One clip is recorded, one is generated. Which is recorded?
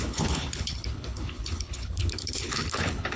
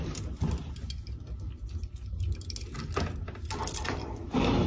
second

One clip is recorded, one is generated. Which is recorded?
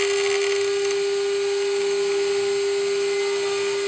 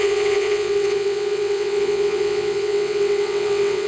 first